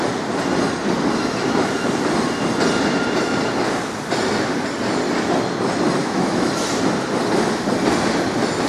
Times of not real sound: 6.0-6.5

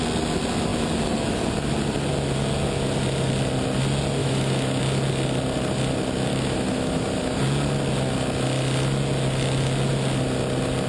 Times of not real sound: 4.2-4.8; 6.3-7.4

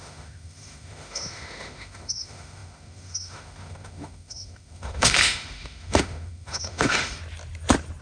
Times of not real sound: 0.0-7.2

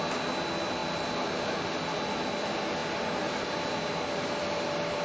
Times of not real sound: none

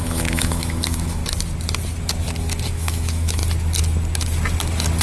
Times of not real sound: 0.0-1.2; 2.7-3.4